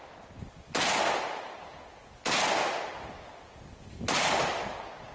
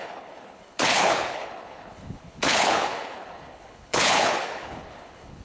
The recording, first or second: first